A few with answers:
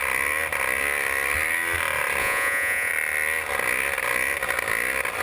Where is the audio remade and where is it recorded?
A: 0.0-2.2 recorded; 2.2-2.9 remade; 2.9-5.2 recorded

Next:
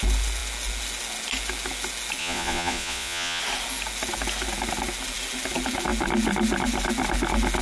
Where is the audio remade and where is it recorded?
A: 0.0-2.2 recorded; 2.2-3.4 remade; 3.4-7.6 recorded

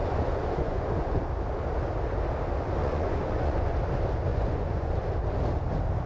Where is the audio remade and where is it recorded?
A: 0.0-1.2 remade; 1.2-2.8 recorded; 2.8-3.8 remade; 3.8-4.3 recorded; 4.3-4.9 remade; 4.9-6.1 recorded